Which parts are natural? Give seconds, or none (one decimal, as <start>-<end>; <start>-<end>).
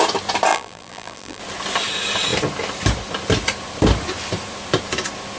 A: 0.0-0.5; 1.4-5.4